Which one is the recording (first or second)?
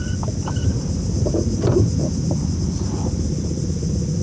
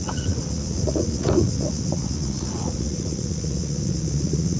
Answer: first